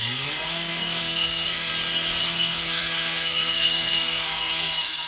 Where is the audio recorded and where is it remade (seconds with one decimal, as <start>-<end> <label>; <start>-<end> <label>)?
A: 0.0-1.7 remade; 1.7-2.2 recorded; 2.2-5.1 remade